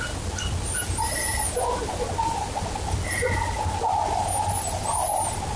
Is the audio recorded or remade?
recorded